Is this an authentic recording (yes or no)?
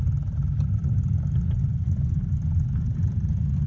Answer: yes